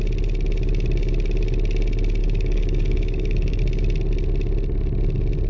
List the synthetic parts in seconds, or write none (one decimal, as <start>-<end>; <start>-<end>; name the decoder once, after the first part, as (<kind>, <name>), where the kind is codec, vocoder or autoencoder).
2.2-3.6 (codec, DAC)